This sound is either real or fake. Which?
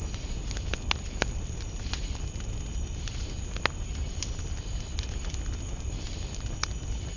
real